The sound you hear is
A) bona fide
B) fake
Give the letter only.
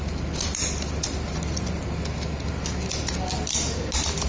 A